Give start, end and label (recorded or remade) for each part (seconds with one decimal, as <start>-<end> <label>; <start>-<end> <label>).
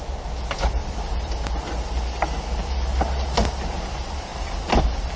0.0-5.2 recorded